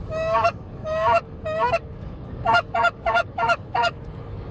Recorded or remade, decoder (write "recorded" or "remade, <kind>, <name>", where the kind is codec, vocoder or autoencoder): remade, codec, DAC